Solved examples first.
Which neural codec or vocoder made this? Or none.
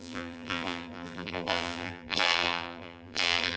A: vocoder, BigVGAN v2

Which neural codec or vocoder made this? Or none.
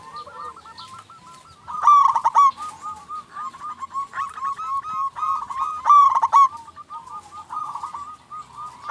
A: none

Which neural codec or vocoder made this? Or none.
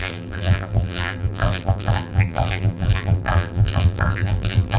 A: vocoder, BigVGAN v2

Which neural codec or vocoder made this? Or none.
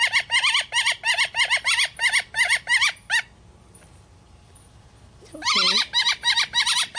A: none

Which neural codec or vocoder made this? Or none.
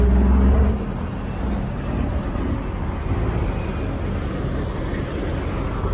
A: none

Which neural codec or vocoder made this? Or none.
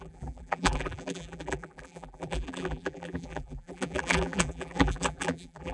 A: vocoder, BigVGAN v2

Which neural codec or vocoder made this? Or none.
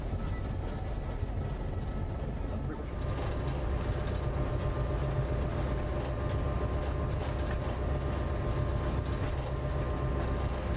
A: none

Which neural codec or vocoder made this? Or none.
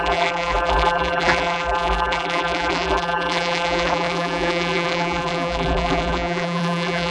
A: vocoder, BigVGAN v2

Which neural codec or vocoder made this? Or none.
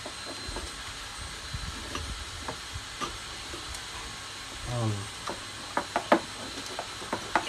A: none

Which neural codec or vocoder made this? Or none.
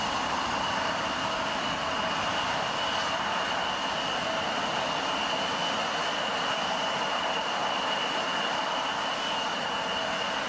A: none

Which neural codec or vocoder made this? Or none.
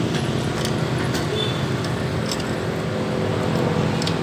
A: none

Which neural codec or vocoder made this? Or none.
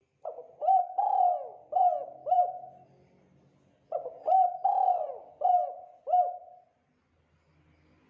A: none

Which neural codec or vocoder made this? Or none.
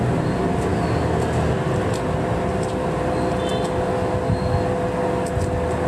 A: none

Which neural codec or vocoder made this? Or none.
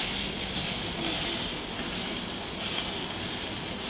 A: none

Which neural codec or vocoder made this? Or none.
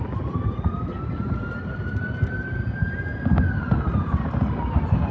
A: none